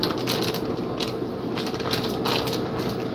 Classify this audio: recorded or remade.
recorded